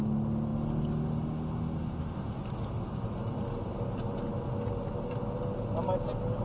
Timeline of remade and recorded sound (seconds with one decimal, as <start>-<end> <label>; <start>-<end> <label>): 0.0-6.4 recorded